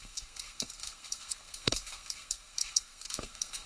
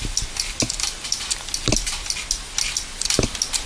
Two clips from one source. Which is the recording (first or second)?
second